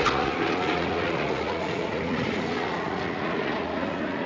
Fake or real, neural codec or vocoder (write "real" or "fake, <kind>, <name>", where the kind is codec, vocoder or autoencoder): fake, vocoder, Vocos